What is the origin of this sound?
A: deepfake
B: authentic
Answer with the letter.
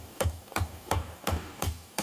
A